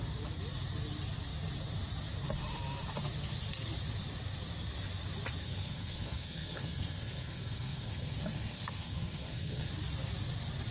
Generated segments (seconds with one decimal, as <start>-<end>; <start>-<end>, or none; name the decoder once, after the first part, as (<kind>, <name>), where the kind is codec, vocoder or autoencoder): 5.4-9.7 (codec, SNAC)